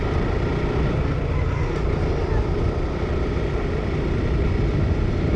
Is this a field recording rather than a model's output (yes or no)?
yes